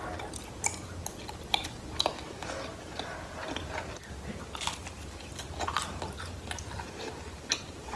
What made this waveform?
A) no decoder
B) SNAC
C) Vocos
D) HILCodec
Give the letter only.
A